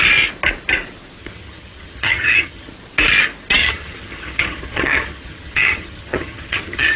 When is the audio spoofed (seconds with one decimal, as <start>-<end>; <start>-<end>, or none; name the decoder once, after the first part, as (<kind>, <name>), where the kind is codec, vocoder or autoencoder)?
1.2-2.7 (vocoder, HiFi-GAN); 3.6-7.0